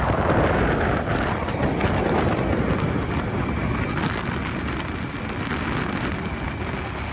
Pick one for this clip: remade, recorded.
recorded